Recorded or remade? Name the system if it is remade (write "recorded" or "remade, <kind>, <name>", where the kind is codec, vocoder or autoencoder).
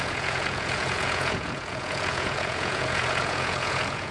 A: remade, vocoder, Vocos